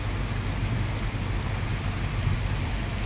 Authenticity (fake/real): real